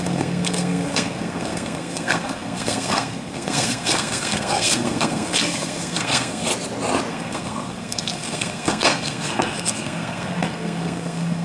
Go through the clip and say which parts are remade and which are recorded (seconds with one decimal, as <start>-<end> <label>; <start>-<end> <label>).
0.0-6.5 remade; 6.5-7.1 recorded; 7.1-11.4 remade